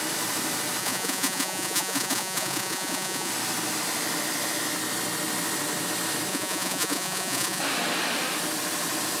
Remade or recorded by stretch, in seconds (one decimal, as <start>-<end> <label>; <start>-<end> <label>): 0.0-0.8 recorded; 0.8-3.3 remade; 3.3-6.3 recorded; 6.3-7.6 remade; 7.6-9.2 recorded